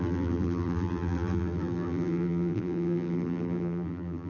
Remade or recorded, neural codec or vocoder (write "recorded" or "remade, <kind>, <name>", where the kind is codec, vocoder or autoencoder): remade, vocoder, BigVGAN v2